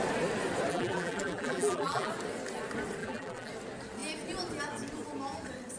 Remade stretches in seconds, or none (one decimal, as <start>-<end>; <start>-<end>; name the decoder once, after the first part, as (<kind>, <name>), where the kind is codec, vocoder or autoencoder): 0.7-2.1 (vocoder, BigVGAN v2); 3.0-3.5